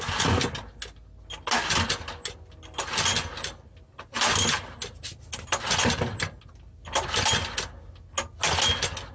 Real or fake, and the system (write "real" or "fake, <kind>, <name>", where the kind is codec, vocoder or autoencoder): real